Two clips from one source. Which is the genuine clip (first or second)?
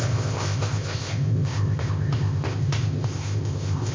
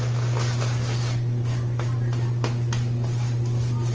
second